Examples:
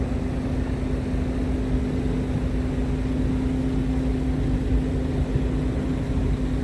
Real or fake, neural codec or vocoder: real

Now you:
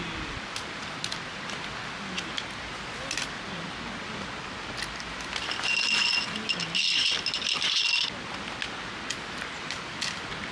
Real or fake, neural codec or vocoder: real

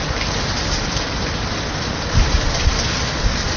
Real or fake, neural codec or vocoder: real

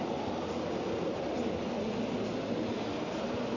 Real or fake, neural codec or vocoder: real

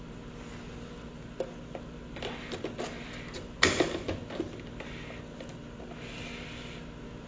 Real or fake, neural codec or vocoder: real